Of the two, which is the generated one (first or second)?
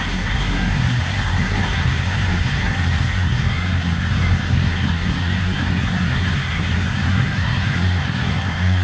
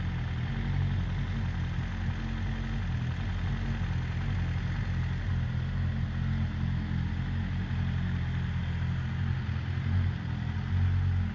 first